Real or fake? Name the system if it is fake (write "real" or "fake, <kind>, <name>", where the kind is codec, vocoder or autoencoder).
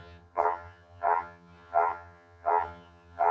fake, vocoder, HiFi-GAN